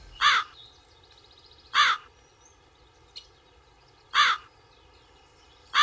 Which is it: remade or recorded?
recorded